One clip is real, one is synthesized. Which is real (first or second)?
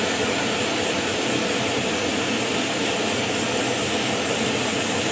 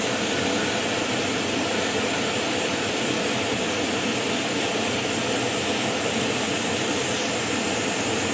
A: first